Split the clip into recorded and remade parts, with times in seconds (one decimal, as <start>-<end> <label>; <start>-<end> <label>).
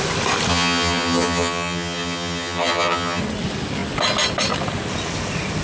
0.0-0.5 recorded; 0.5-3.2 remade; 3.2-5.6 recorded